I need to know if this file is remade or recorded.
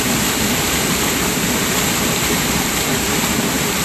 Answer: remade